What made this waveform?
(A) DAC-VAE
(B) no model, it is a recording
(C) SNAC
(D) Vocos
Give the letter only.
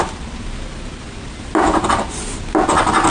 B